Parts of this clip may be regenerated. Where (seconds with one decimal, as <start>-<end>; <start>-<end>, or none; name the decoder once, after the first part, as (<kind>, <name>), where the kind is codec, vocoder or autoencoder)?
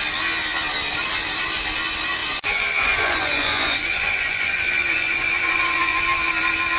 2.2-6.0 (vocoder, Vocos)